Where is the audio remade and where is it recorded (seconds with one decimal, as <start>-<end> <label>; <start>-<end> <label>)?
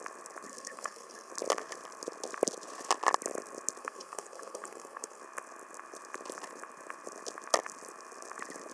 0.0-0.5 recorded; 0.5-1.3 remade; 1.3-3.8 recorded; 3.8-5.2 remade; 5.2-8.7 recorded